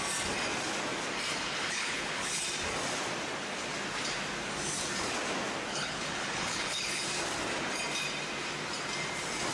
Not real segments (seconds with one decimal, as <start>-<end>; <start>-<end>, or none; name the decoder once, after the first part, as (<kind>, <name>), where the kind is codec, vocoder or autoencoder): 1.3-2.4 (codec, HILCodec); 5.7-7.0